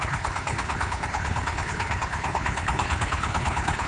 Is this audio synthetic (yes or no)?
yes